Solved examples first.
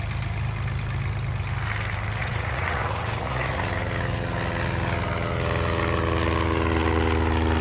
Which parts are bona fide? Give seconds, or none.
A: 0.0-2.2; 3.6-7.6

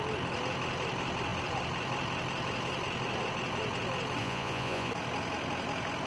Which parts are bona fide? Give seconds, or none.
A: 0.0-4.2; 4.9-6.1

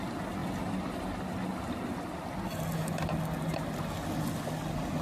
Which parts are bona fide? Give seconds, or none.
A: 0.0-5.0